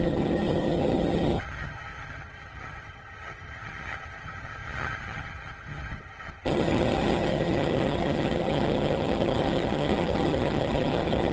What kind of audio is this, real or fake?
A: fake